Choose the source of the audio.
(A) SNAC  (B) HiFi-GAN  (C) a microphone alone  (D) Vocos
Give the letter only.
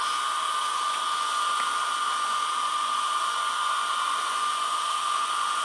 D